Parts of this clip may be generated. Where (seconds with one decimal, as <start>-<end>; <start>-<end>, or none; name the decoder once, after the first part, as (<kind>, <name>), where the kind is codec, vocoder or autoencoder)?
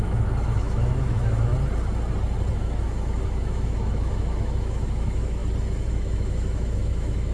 0.0-1.5 (autoencoder, DAC-VAE); 2.5-5.4; 5.9-7.3